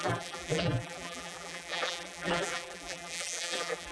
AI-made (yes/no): yes